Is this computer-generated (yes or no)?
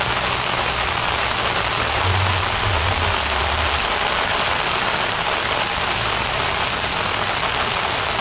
no